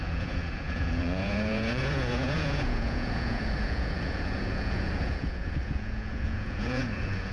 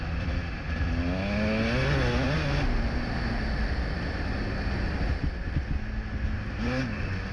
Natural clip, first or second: second